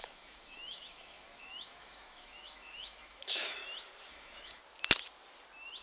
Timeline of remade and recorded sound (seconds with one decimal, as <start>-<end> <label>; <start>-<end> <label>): 0.0-3.6 remade; 3.6-4.1 recorded; 4.1-4.6 remade; 4.6-5.8 recorded